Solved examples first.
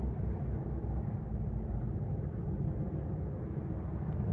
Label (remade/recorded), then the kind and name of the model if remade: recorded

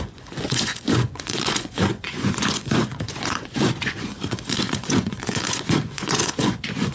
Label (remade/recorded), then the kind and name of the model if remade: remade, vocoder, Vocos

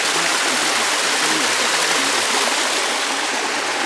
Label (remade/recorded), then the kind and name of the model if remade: recorded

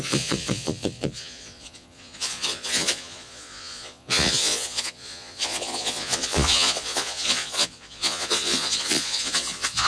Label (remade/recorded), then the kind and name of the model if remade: remade, vocoder, Vocos